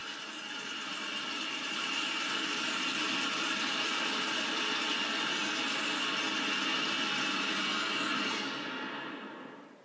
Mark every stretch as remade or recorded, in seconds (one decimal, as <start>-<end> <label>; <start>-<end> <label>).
0.0-4.6 remade; 4.6-9.8 recorded